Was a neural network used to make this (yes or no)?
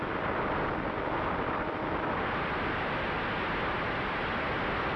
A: no